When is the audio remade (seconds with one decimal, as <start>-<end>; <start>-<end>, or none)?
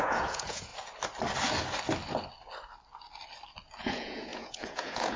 0.0-0.7; 3.8-5.2